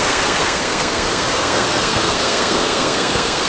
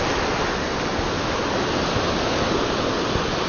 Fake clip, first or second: first